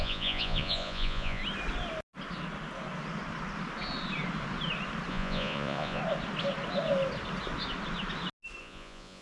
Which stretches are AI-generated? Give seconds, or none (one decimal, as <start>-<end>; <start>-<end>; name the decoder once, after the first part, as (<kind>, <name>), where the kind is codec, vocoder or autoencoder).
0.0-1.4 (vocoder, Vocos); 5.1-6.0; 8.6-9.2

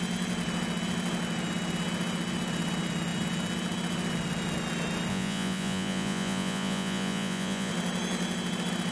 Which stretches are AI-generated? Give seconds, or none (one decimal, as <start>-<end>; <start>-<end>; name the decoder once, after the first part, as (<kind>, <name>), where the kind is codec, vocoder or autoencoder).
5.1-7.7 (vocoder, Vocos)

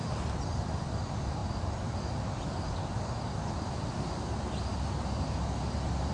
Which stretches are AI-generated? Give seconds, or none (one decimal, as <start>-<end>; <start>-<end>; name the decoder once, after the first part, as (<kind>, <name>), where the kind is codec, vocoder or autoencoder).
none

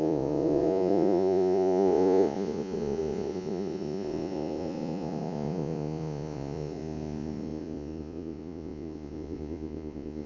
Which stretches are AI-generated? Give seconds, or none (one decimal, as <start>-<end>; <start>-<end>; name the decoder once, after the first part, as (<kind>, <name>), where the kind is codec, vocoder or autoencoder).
0.0-10.3 (vocoder, Vocos)

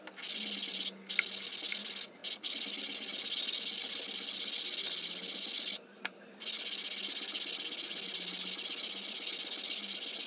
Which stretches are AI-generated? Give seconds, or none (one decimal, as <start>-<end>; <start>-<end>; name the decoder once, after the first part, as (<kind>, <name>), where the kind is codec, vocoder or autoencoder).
none

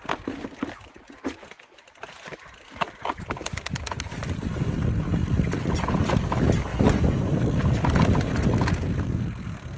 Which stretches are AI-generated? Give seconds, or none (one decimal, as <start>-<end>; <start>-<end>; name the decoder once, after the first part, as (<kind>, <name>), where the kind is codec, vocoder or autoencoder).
6.7-7.3 (vocoder, Vocos)